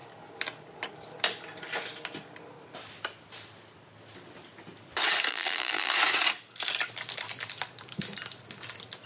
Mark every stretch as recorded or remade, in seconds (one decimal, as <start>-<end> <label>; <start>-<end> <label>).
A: 0.0-5.3 recorded; 5.3-5.9 remade; 5.9-9.1 recorded